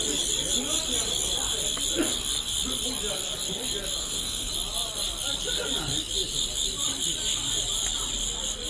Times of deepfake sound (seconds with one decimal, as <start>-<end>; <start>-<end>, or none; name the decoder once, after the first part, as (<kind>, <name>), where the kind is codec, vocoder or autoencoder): 4.0-4.5 (codec, SNAC)